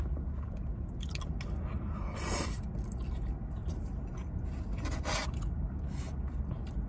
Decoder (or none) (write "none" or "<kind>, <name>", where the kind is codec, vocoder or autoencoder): none